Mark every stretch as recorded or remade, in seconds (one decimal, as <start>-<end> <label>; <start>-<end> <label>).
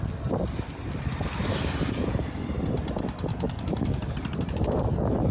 0.0-3.3 recorded; 3.3-4.1 remade; 4.1-5.3 recorded